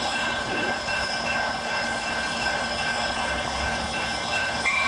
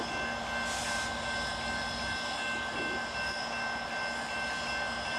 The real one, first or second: second